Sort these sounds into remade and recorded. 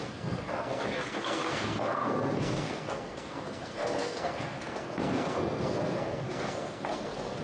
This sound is remade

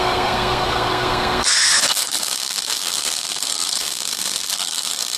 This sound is remade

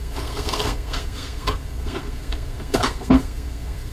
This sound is remade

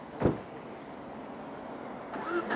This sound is recorded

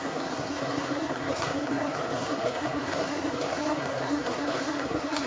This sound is remade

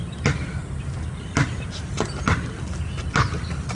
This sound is recorded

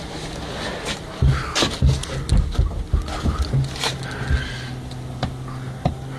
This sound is recorded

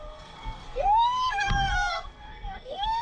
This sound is remade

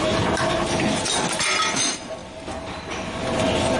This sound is recorded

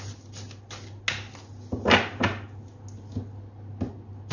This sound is recorded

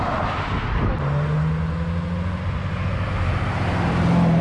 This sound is recorded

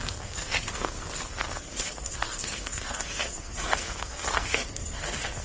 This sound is remade